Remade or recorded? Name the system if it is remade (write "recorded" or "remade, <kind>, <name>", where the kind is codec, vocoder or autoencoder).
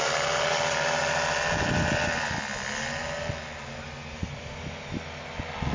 recorded